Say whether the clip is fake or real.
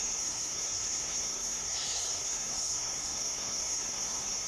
fake